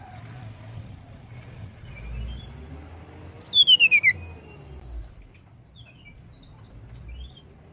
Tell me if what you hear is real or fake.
real